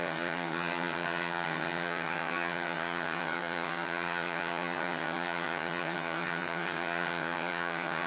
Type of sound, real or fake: fake